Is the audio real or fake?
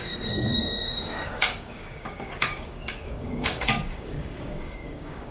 fake